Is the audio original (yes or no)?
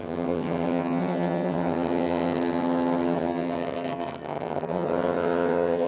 no